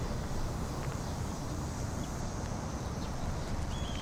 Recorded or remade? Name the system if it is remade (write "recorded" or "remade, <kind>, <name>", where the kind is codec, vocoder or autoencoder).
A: remade, vocoder, BigVGAN v2